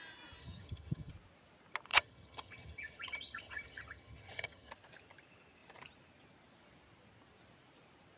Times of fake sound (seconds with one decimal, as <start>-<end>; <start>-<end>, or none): 0.4-1.1; 1.9-4.7